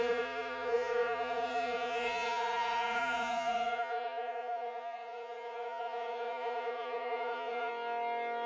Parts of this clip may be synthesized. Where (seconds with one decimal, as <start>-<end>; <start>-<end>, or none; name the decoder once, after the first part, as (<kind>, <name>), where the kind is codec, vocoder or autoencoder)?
0.0-7.7 (vocoder, Vocos)